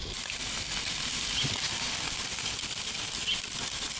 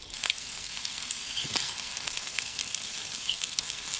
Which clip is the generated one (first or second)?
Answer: second